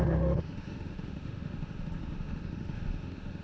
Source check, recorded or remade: remade